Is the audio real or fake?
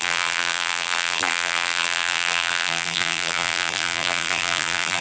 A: fake